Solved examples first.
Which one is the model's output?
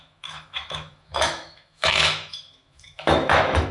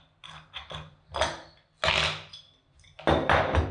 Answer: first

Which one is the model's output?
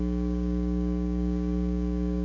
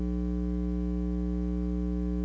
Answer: first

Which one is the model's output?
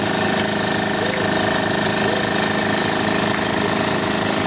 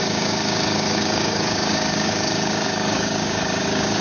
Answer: second